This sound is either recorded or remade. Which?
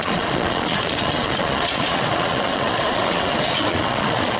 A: remade